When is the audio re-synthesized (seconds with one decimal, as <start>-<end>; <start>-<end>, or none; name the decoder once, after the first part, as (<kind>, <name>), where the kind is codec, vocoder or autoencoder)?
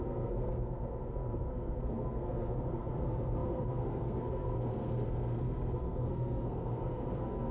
0.0-7.5 (codec, SNAC)